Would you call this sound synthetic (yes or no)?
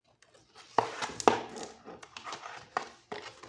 no